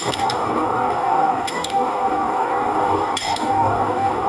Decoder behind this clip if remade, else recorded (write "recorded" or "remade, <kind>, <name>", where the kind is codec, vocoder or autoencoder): remade, codec, DAC